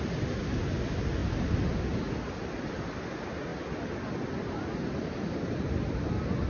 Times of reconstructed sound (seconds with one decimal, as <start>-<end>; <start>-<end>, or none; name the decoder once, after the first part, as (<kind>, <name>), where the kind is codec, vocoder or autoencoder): none